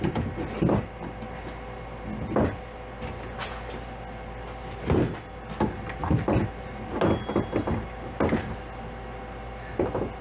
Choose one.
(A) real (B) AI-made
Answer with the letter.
A